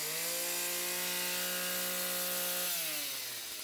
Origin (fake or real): real